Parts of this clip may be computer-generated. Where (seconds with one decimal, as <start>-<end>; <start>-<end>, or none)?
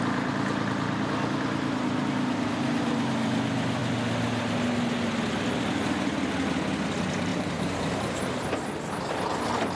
7.3-8.2